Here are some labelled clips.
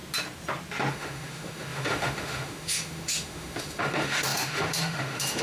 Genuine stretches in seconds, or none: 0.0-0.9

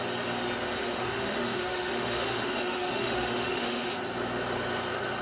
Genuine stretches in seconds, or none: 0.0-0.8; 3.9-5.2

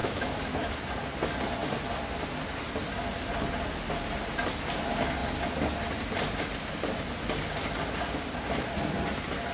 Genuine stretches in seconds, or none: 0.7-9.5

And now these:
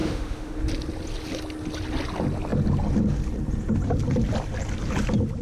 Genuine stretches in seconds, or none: 0.6-5.4

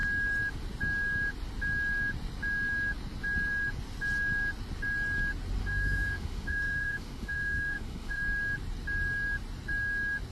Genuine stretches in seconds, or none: 0.0-5.6; 8.2-10.3

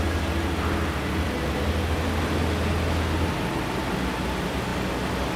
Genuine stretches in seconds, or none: 0.0-5.4

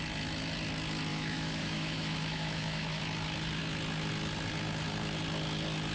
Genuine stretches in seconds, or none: 0.0-1.1; 3.0-5.9